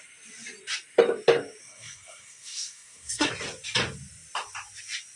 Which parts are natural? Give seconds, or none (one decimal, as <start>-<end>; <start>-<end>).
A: 0.0-1.6; 3.3-5.2